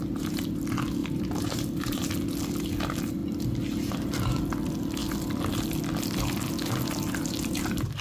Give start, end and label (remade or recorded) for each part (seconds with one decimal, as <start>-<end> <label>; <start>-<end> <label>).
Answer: 0.0-0.6 remade; 0.6-1.0 recorded; 1.0-2.1 remade; 2.1-8.0 recorded